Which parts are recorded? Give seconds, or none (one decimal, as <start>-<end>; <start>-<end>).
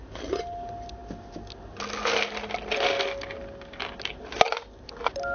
0.0-5.3